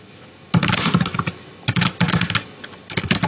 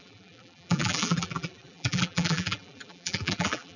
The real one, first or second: first